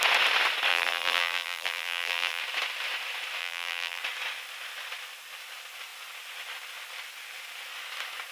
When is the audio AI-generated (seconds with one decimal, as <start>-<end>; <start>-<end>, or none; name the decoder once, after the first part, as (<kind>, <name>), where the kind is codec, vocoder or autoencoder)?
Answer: 0.7-2.4 (vocoder, BigVGAN v2); 3.4-4.0